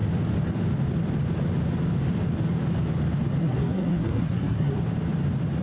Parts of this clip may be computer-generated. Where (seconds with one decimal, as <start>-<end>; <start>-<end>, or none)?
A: 3.4-4.8